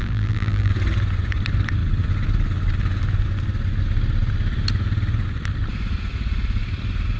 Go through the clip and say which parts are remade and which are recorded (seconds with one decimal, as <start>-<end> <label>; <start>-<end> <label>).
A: 0.0-0.7 remade; 0.7-7.2 recorded